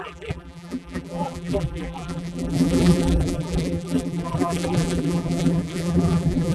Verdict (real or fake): fake